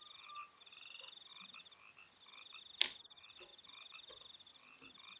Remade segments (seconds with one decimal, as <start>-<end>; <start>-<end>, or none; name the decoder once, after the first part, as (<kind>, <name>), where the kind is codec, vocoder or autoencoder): none

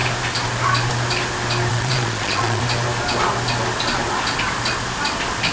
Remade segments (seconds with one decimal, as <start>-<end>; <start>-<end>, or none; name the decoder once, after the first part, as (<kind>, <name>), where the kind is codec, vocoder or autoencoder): 1.7-2.6 (vocoder, Vocos)

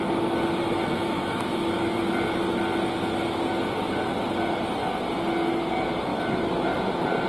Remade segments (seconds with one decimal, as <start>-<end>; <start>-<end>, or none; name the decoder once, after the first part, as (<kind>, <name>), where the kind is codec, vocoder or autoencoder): 0.8-2.0 (autoencoder, DAC-VAE); 6.1-6.8